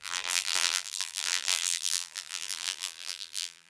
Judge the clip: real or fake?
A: fake